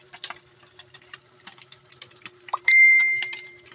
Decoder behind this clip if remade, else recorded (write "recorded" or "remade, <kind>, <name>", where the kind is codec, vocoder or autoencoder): remade, vocoder, BigVGAN v2